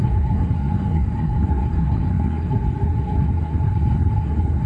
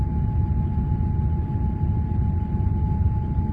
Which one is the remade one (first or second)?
first